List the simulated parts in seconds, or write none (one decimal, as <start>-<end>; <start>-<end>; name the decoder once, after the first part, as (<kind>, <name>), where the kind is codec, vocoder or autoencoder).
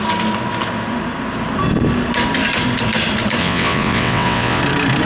3.4-4.6 (vocoder, WaveNeXt)